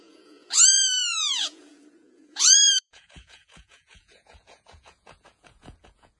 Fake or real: fake